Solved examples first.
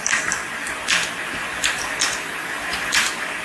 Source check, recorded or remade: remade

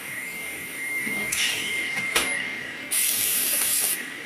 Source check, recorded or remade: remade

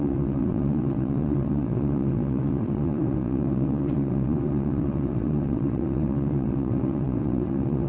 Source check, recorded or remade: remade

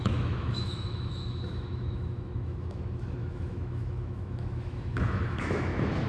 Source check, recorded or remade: remade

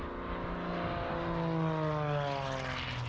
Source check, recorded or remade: recorded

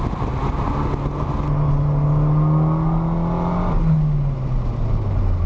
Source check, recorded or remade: recorded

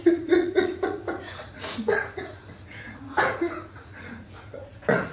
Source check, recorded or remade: remade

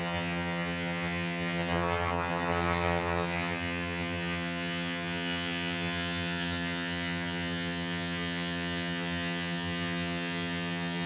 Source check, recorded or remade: remade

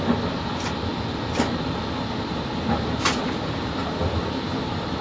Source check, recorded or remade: recorded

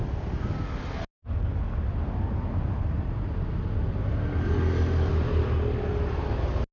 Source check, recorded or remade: recorded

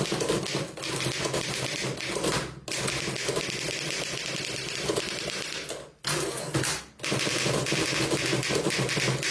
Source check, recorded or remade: recorded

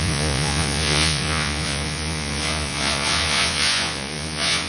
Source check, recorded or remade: remade